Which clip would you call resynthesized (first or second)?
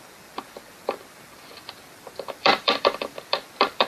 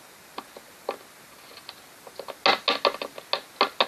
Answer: first